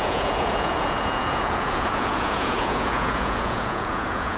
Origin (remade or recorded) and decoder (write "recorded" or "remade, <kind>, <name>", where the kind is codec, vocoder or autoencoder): remade, vocoder, Vocos